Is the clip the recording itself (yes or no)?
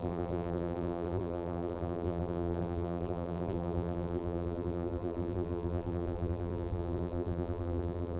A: no